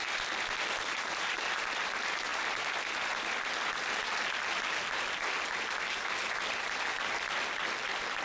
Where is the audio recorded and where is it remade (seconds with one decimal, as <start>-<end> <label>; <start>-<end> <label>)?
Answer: 0.0-1.0 recorded; 1.0-1.8 remade; 1.8-8.2 recorded